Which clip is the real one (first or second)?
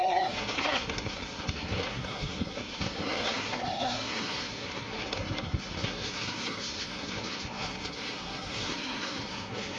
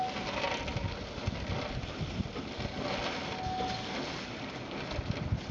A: second